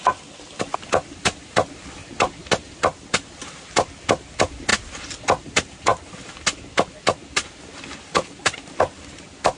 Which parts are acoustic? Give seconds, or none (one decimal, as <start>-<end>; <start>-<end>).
0.0-9.6